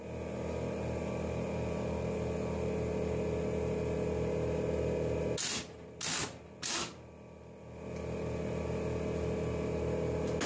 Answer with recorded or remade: recorded